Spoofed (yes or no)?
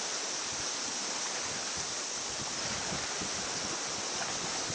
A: no